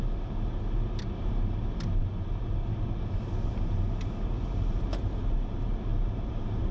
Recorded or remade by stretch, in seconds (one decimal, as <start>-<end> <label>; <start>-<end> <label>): 0.0-5.9 recorded; 5.9-6.7 remade